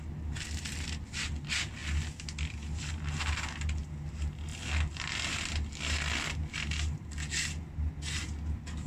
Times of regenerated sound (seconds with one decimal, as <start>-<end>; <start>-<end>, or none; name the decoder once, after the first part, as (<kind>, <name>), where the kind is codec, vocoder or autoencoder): none